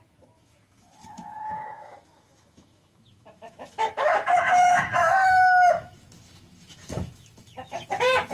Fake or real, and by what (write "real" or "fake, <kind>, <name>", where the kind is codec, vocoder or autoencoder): fake, autoencoder, DAC-VAE